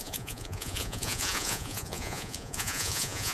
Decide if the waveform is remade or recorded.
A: remade